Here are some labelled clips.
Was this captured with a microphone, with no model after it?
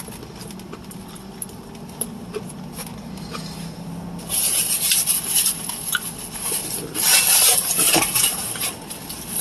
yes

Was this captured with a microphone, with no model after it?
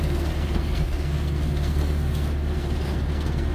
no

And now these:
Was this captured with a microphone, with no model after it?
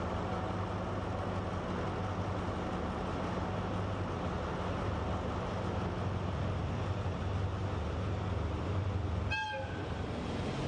yes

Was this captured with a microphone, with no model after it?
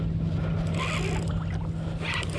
yes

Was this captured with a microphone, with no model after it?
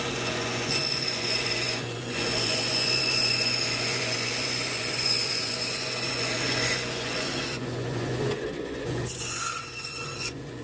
no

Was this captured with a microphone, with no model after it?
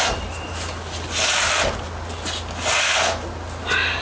yes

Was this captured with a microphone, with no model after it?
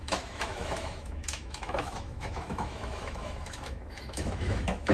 no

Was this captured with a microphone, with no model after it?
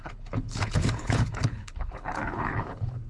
no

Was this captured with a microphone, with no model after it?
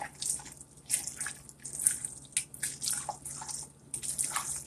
yes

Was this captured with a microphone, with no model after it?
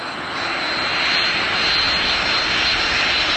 yes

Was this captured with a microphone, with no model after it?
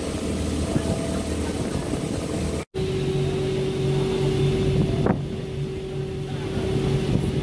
yes